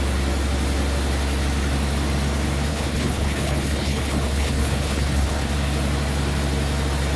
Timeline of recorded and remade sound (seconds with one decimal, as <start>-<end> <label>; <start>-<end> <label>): 0.0-2.7 recorded; 2.7-5.5 remade; 5.5-7.2 recorded